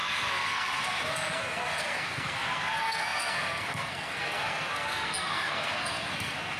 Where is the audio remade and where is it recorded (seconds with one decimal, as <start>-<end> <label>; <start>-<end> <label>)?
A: 0.0-6.6 remade